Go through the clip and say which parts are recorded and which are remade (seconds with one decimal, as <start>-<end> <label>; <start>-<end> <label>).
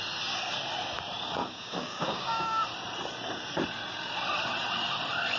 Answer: 0.0-1.4 recorded; 1.4-2.6 remade; 2.6-5.4 recorded